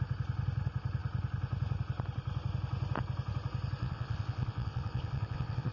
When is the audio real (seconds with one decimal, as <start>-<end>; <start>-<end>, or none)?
0.0-3.8